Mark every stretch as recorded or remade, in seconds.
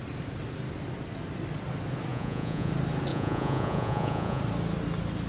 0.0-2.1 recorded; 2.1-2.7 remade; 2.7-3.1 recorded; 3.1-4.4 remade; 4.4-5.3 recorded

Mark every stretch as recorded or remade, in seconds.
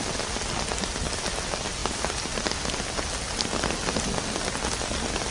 0.0-5.3 recorded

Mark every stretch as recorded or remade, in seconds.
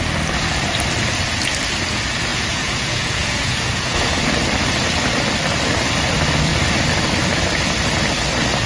0.0-2.3 recorded; 2.3-4.2 remade; 4.2-8.7 recorded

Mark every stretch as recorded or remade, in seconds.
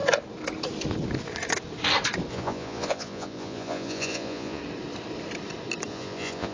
0.0-2.3 recorded; 2.3-4.6 remade; 4.6-5.9 recorded; 5.9-6.5 remade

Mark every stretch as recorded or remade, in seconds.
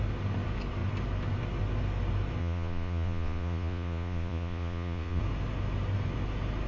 0.0-2.4 recorded; 2.4-5.2 remade; 5.2-6.7 recorded